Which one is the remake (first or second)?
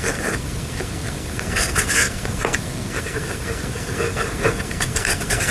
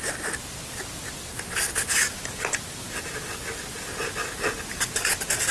first